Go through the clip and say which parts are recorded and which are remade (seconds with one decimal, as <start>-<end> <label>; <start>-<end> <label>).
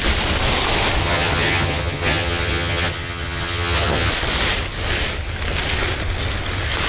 0.0-1.0 recorded; 1.0-4.1 remade; 4.1-6.9 recorded